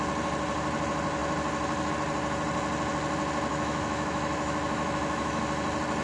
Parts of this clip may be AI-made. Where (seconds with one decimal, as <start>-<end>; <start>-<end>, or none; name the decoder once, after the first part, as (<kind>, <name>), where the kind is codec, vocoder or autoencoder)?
3.5-5.4 (autoencoder, DAC-VAE)